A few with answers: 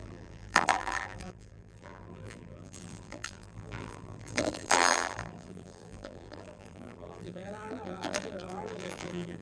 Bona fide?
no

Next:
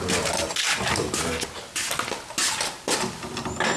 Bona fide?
yes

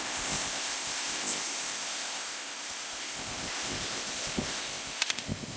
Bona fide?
no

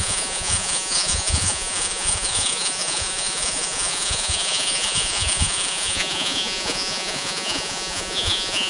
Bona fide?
no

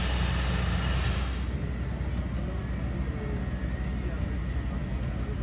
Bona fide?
yes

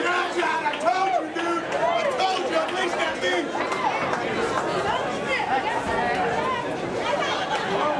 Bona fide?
yes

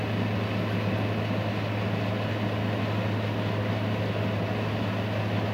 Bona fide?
yes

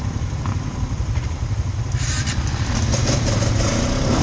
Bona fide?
yes